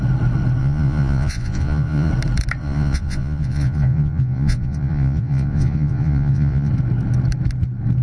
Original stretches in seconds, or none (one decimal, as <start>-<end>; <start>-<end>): 0.0-0.6; 2.1-2.6; 6.7-8.0